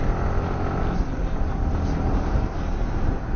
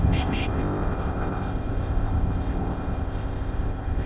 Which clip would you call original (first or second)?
first